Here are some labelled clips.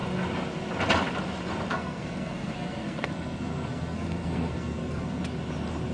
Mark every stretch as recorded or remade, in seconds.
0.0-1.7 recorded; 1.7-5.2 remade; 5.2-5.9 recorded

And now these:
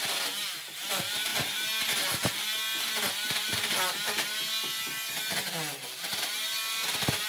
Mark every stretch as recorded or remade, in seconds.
0.0-7.3 recorded

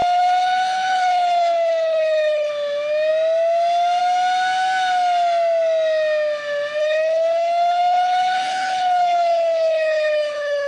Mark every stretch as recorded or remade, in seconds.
0.0-2.5 remade; 2.5-6.8 recorded; 6.8-10.7 remade

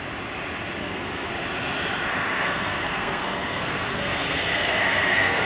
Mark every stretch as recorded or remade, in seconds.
0.0-0.8 recorded; 0.8-1.3 remade; 1.3-2.1 recorded; 2.1-5.5 remade